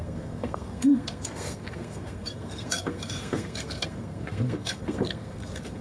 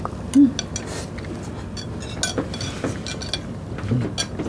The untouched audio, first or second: second